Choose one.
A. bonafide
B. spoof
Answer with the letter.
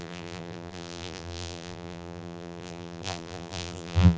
B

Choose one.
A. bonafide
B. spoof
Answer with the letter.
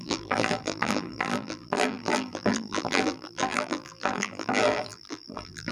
B